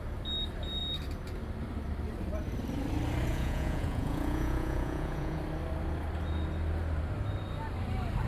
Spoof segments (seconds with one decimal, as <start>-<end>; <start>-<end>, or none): 3.3-5.4